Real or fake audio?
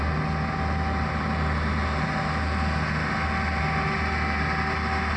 real